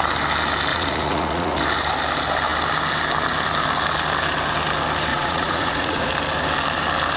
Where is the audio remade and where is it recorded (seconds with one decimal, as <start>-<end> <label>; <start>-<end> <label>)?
0.0-0.7 recorded; 0.7-1.6 remade; 1.6-5.1 recorded; 5.1-6.1 remade; 6.1-7.2 recorded